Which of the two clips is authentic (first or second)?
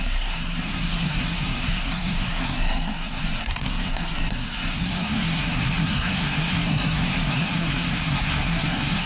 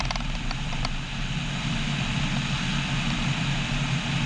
second